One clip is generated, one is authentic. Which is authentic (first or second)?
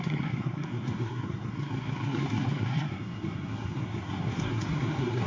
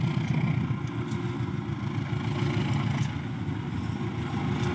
second